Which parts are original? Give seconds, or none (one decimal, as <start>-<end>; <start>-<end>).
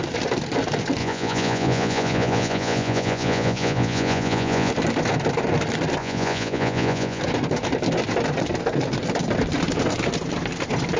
0.0-1.0; 4.7-6.0; 7.2-11.0